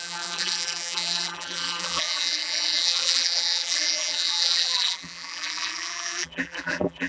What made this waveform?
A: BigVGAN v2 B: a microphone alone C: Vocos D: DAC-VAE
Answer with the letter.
A